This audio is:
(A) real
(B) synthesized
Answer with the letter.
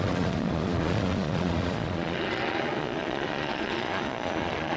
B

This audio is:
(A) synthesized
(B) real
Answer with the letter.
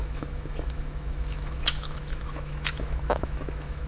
A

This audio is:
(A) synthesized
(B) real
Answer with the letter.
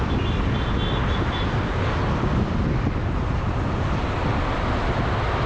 B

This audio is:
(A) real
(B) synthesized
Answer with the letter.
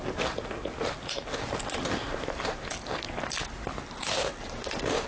A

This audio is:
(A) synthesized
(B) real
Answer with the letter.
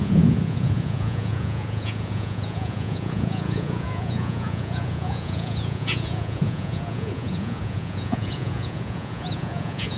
A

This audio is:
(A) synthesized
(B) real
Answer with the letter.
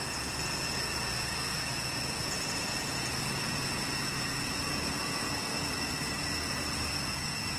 A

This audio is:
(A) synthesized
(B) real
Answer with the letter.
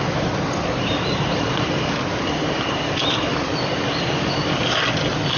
B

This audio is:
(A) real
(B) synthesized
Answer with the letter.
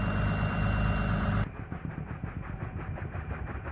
A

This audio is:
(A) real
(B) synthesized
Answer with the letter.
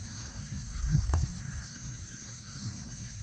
B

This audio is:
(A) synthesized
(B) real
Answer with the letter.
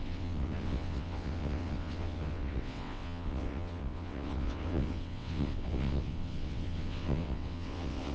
A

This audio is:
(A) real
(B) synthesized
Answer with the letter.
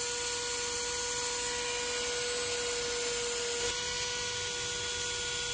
A